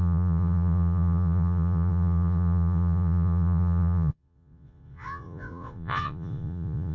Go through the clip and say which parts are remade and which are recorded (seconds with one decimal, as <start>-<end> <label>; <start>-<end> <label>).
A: 0.0-6.9 remade